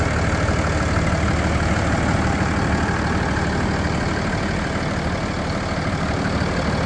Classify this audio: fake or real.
real